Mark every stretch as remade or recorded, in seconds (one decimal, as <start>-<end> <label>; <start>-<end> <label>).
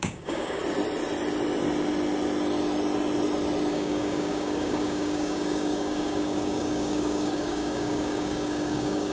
0.0-0.6 remade; 0.6-3.7 recorded; 3.7-9.1 remade